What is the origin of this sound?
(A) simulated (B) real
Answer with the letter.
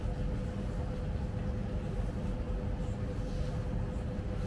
B